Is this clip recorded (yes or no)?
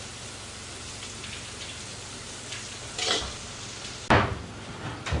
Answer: yes